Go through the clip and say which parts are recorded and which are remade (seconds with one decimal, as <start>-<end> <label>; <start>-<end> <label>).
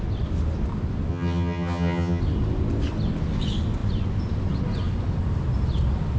0.0-1.1 recorded; 1.1-2.2 remade; 2.2-6.2 recorded